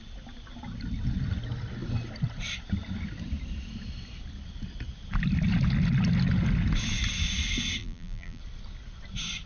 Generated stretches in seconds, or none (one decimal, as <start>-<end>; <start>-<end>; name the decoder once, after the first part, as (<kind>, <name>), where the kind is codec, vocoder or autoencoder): 7.8-8.4 (vocoder, BigVGAN v2)